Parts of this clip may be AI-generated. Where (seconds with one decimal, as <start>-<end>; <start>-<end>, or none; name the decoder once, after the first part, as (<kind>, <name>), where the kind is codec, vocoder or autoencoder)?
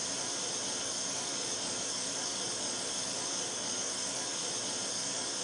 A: 0.8-4.4 (codec, DAC); 4.9-5.4